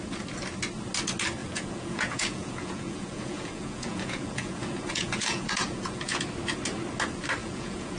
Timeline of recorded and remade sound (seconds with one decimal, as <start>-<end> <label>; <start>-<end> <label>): 0.0-1.4 recorded; 1.4-6.2 remade; 6.2-7.4 recorded; 7.4-8.0 remade